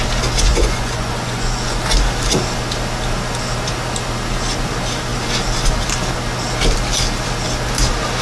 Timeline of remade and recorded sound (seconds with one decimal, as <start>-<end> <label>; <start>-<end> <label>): 0.0-0.5 recorded; 0.5-1.8 remade; 1.8-8.2 recorded